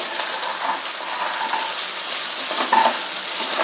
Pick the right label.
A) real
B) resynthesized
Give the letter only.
A